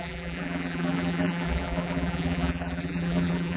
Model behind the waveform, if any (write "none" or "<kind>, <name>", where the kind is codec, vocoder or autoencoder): vocoder, BigVGAN v2